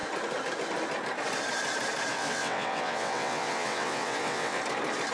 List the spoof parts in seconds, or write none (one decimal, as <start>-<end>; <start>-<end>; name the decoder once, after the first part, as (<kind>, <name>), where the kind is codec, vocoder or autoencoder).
2.1-4.6 (vocoder, WaveNeXt)